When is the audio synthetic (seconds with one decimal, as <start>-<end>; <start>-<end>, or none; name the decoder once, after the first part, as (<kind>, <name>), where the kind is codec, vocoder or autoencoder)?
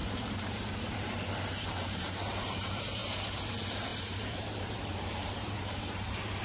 0.0-3.0 (vocoder, BigVGAN v2); 3.5-6.4